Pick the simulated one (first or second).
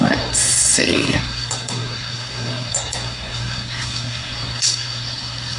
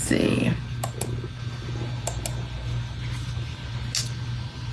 first